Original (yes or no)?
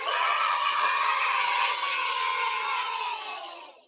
no